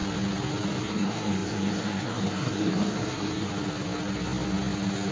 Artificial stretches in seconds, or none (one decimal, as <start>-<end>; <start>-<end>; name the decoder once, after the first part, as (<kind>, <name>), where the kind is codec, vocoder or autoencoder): 0.8-3.5 (codec, SNAC)